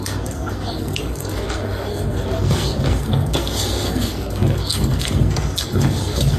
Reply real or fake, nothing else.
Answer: fake